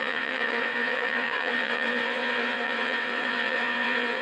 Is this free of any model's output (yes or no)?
no